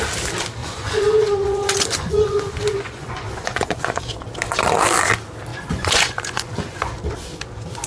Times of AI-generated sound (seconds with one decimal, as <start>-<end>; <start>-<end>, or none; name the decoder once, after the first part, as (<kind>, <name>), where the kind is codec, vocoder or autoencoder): 0.6-4.0 (vocoder, Vocos); 5.5-7.0

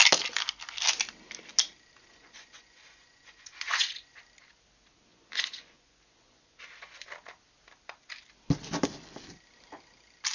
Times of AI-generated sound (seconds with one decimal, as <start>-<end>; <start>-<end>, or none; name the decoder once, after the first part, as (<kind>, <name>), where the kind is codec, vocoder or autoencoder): 2.0-4.2 (vocoder, Vocos); 5.1-6.6